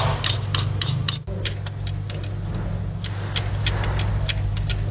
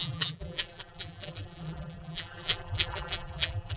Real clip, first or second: first